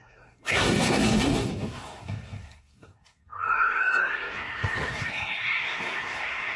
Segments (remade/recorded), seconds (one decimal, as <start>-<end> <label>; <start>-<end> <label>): 0.0-6.6 remade